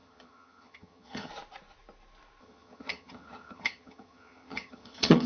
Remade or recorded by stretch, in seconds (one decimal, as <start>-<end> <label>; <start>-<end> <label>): 0.0-1.3 remade; 1.3-2.4 recorded; 2.4-5.3 remade